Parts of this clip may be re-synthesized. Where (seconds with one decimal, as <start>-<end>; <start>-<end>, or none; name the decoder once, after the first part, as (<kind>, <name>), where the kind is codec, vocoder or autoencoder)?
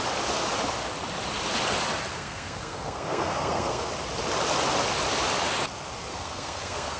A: 2.1-3.9 (codec, SNAC); 6.1-7.0